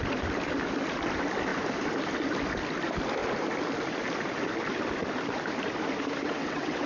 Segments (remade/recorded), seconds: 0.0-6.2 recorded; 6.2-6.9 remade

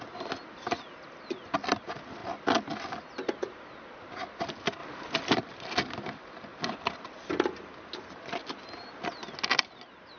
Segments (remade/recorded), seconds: 0.0-10.2 recorded

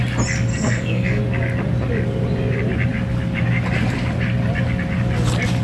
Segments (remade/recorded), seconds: 0.0-0.5 recorded; 0.5-1.2 remade; 1.2-5.6 recorded

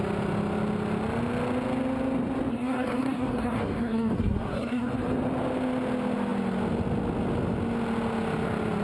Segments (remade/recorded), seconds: 0.0-2.5 recorded; 2.5-4.9 remade; 4.9-8.8 recorded

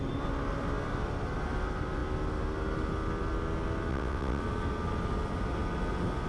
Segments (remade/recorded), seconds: 0.0-3.9 recorded; 3.9-4.4 remade; 4.4-6.3 recorded

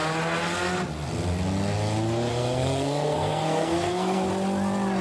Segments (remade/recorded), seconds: 0.0-2.3 recorded; 2.3-4.3 remade; 4.3-5.0 recorded

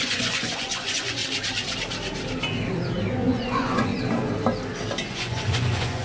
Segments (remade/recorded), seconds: 0.0-1.2 remade; 1.2-3.1 recorded; 3.1-3.9 remade; 3.9-5.1 recorded; 5.1-6.0 remade